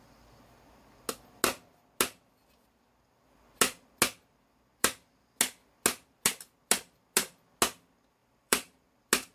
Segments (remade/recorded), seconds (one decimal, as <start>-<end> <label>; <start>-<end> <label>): 0.0-8.2 recorded; 8.2-8.8 remade; 8.8-9.3 recorded